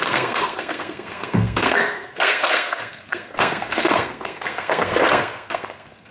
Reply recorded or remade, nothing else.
remade